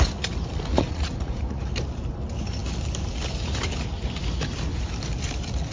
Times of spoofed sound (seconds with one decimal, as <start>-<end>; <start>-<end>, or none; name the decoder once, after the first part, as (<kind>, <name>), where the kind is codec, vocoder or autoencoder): 0.7-1.6 (vocoder, Vocos)